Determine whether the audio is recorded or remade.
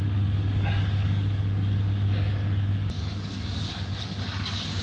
remade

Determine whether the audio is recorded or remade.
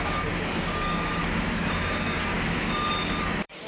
remade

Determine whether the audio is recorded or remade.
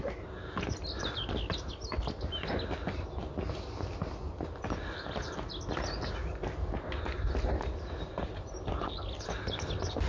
recorded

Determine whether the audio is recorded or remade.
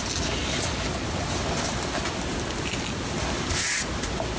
recorded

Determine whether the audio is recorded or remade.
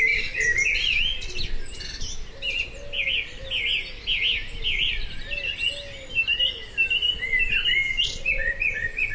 recorded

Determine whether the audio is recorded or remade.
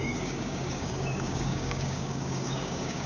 remade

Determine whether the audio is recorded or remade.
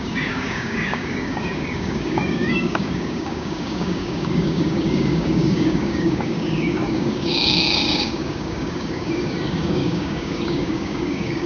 remade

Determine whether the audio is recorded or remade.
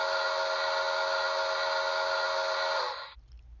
recorded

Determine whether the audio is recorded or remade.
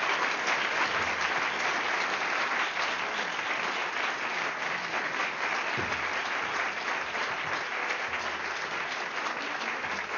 recorded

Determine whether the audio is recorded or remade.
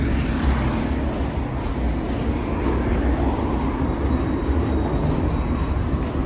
recorded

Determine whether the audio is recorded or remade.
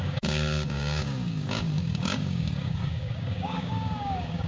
remade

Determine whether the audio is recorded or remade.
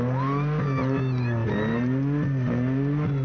recorded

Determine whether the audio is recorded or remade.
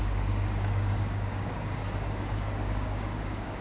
remade